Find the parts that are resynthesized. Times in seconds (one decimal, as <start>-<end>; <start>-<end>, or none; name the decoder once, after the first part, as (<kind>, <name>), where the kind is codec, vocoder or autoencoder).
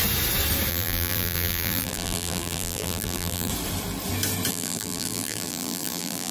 0.7-3.5 (vocoder, BigVGAN v2); 4.5-6.3